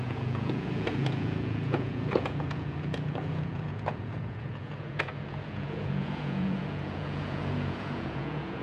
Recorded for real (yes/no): no